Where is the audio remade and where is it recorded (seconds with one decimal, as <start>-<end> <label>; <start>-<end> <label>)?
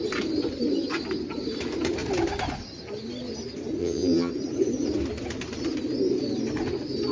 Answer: 0.0-3.8 recorded; 3.8-4.3 remade; 4.3-7.1 recorded